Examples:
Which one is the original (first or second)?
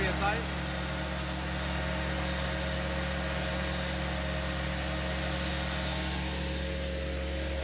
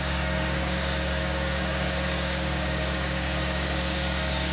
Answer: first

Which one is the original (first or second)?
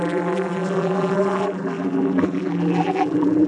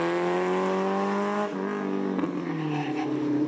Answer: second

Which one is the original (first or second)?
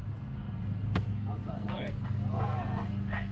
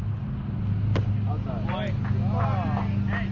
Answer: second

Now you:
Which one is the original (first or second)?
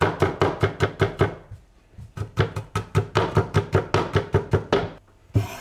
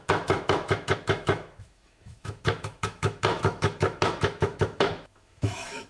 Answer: first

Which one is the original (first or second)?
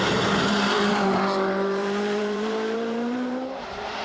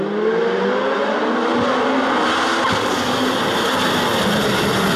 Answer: second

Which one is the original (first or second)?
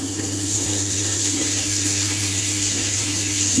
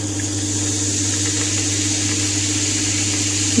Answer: second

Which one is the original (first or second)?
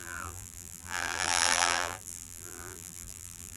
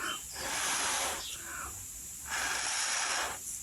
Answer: second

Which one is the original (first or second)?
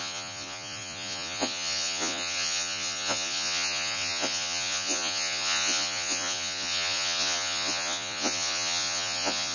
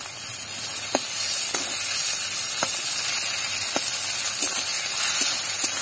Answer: second